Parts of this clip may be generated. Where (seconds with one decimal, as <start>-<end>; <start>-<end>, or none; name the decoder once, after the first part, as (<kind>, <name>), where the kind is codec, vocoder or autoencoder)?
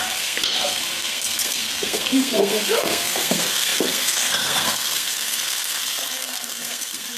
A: 0.0-7.2 (codec, SNAC)